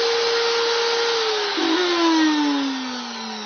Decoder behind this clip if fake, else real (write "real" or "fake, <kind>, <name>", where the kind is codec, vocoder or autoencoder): real